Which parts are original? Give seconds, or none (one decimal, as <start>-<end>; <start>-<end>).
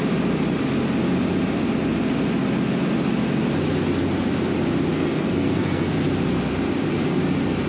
0.0-4.9; 5.9-7.7